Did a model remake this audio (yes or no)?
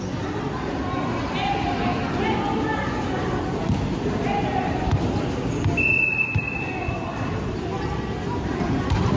no